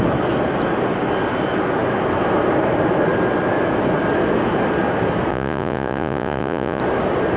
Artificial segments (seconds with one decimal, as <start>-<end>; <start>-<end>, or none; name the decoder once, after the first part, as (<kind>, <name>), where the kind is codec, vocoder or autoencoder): 5.3-6.8 (vocoder, Vocos)